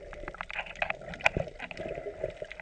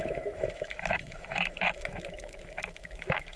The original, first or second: first